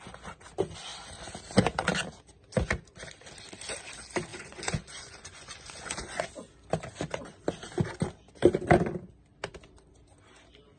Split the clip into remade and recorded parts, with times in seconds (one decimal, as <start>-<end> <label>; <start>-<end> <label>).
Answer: 0.0-4.3 recorded; 4.3-6.3 remade; 6.3-10.8 recorded